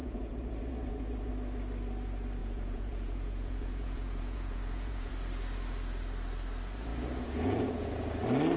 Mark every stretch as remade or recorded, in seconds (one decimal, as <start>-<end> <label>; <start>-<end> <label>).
0.0-1.3 remade; 1.3-2.4 recorded; 2.4-5.1 remade; 5.1-6.9 recorded; 6.9-7.9 remade; 7.9-8.6 recorded